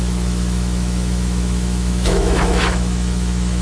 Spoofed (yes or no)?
yes